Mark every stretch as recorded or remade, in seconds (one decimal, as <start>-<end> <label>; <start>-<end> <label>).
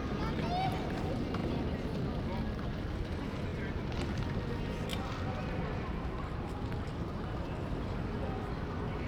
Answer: 0.0-9.1 recorded